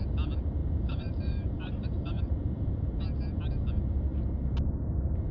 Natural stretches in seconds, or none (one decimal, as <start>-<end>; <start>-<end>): 0.0-0.6; 3.0-5.3